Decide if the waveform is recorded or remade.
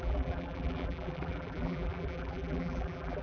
remade